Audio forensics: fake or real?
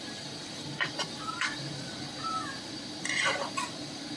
fake